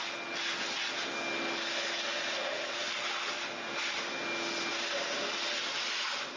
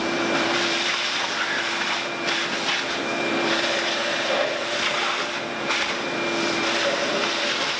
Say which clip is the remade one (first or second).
second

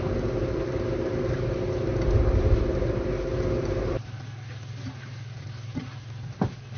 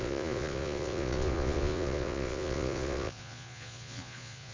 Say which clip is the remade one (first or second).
second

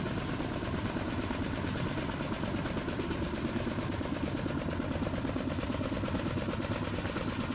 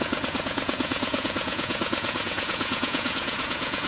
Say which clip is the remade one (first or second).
second